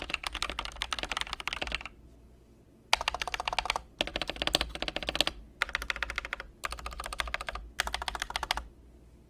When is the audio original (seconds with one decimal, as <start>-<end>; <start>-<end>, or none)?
0.0-9.3